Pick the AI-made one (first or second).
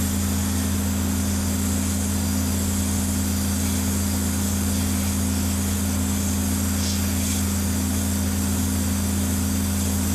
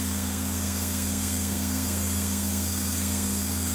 second